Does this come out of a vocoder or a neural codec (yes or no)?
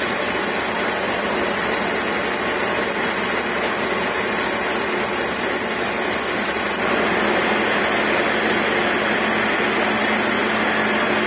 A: no